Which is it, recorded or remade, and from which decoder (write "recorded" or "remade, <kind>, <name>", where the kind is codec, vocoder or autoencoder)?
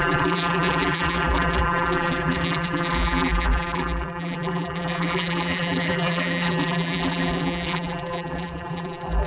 remade, vocoder, BigVGAN v2